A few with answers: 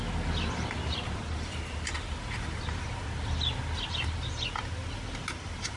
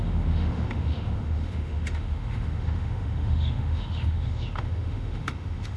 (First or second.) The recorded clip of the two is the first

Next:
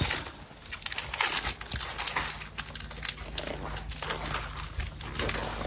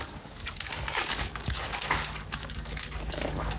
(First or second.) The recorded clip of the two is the first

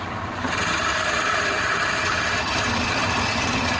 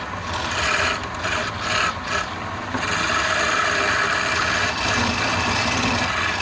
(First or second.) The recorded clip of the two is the second